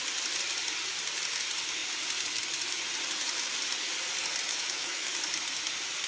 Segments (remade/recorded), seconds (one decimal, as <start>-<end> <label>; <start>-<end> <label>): 0.0-4.5 recorded; 4.5-5.1 remade; 5.1-6.1 recorded